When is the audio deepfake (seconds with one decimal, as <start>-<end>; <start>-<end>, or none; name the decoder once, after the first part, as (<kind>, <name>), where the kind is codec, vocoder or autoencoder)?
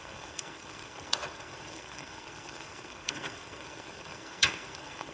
0.0-5.1 (codec, SNAC)